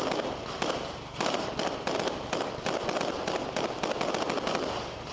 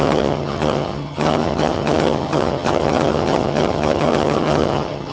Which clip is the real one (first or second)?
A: first